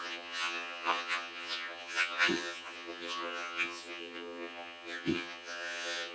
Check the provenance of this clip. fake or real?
fake